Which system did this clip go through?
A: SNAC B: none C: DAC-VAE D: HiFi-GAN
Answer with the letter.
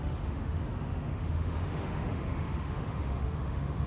C